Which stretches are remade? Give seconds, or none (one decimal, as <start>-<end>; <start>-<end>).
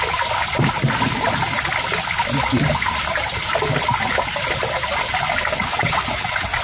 5.7-6.6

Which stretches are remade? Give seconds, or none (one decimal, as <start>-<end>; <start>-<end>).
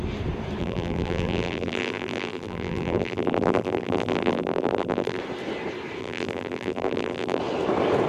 0.6-5.2; 6.0-7.4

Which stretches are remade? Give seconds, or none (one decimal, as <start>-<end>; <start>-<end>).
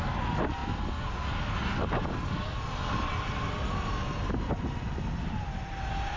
none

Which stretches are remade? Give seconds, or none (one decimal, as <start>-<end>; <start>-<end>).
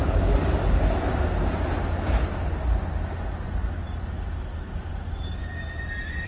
3.8-6.3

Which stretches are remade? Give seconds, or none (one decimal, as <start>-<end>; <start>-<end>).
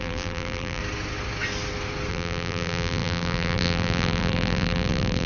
0.0-0.8; 2.1-5.3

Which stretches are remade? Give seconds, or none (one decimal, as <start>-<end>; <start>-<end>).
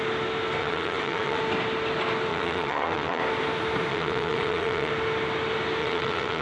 0.6-1.4; 2.3-3.2; 3.9-4.9; 5.8-6.4